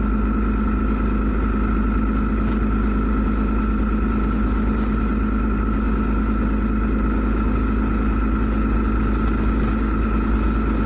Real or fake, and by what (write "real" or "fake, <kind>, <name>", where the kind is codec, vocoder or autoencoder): real